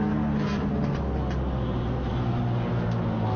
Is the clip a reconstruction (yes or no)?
no